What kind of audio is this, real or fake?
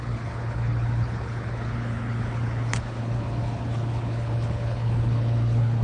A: fake